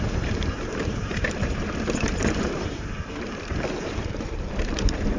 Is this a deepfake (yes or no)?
yes